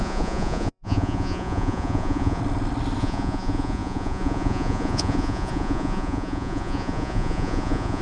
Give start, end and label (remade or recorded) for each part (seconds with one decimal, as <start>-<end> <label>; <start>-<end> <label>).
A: 0.0-2.4 remade; 2.4-3.0 recorded; 3.0-8.0 remade